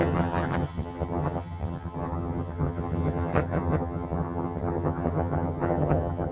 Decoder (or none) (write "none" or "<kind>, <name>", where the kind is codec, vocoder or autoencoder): vocoder, HiFi-GAN